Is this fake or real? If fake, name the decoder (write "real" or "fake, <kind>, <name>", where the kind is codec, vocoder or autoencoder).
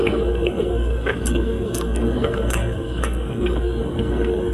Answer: fake, codec, SNAC